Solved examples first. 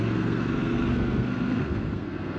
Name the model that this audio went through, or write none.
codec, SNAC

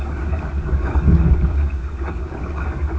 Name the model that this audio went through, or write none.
codec, DAC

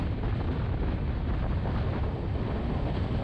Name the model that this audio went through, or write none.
none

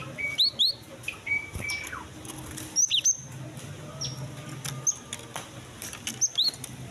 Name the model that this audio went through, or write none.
none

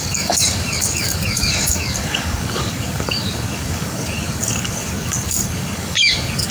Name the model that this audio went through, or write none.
codec, DAC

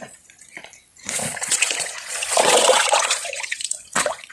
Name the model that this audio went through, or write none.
vocoder, Vocos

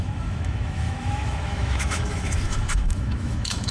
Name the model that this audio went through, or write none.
autoencoder, DAC-VAE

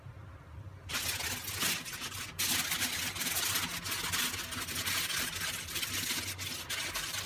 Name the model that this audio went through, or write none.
none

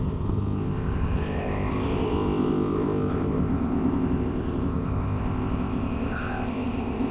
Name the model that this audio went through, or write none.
codec, ZipCodec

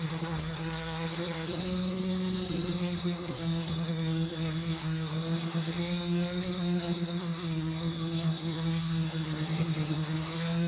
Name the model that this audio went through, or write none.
codec, SNAC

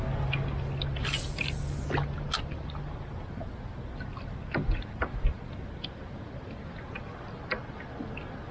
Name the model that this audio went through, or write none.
none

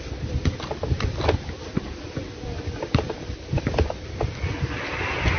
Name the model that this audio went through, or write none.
none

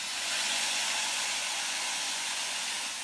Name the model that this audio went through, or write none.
vocoder, Vocos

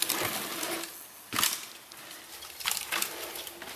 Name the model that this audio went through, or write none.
none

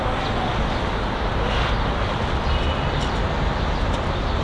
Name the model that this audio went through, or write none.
none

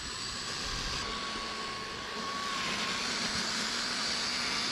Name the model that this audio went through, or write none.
none